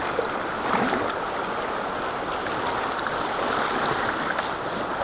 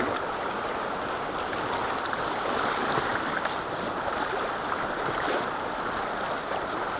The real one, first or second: first